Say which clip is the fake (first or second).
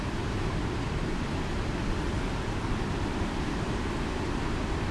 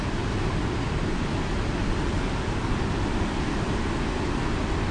first